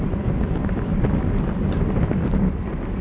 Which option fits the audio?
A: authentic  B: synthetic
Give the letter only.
A